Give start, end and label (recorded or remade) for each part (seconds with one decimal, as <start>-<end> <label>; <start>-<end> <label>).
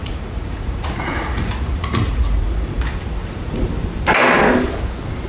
0.0-2.8 remade; 2.8-3.2 recorded; 3.2-3.7 remade; 3.7-5.3 recorded